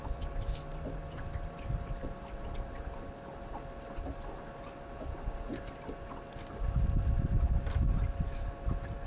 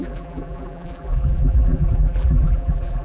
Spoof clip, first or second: second